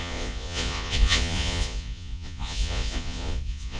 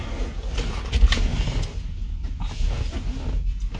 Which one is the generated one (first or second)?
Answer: first